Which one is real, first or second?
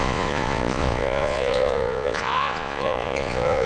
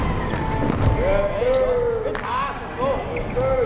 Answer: second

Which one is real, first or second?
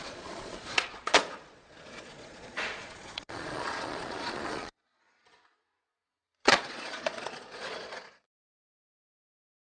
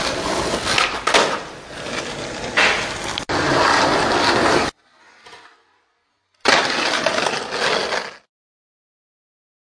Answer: second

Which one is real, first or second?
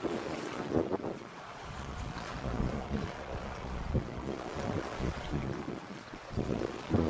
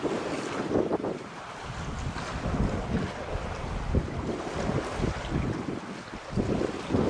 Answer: second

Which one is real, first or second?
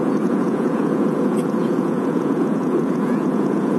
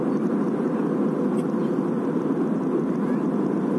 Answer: second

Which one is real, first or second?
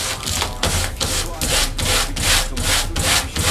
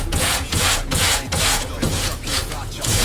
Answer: first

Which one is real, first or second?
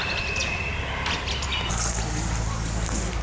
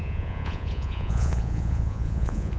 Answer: first